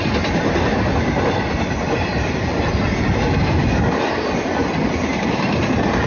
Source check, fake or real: fake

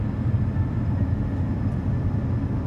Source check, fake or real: real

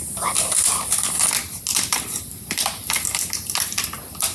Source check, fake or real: real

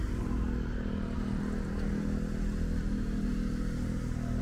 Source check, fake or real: real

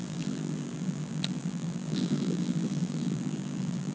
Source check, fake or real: fake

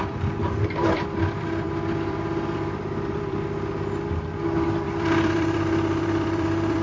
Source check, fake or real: fake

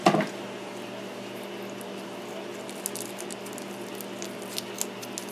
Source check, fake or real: real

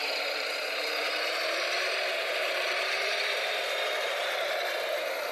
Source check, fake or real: fake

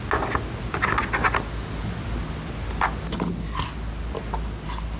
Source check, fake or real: real